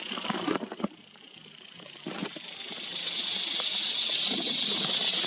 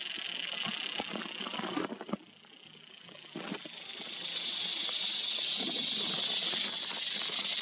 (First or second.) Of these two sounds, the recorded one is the second